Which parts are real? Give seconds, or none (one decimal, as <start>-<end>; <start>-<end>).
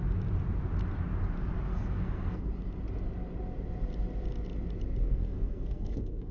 0.0-1.7; 2.5-5.0